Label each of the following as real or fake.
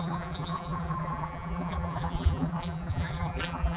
fake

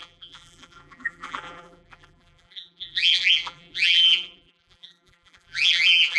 fake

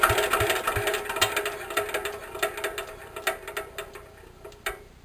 real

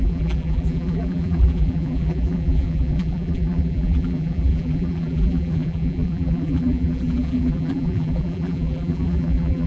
fake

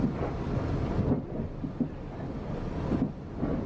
real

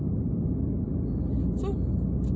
real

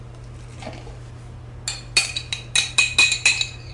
real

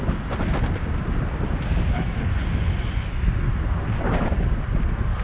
real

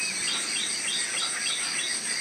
real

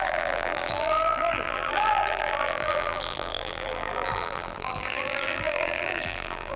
fake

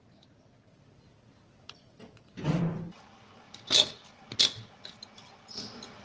real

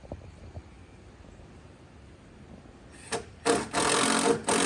real